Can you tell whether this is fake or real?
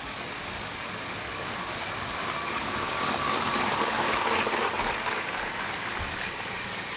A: fake